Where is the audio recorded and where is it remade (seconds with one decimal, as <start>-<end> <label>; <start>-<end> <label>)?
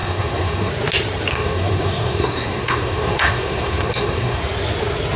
0.0-0.7 remade; 0.7-1.3 recorded; 1.3-4.4 remade; 4.4-5.2 recorded